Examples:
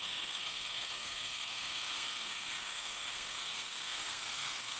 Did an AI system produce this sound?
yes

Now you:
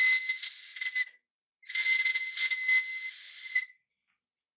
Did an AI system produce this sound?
no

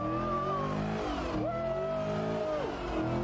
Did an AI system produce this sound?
no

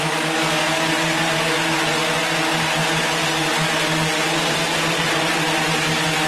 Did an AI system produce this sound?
no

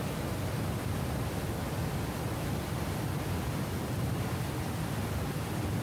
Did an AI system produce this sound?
no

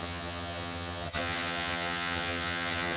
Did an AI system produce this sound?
yes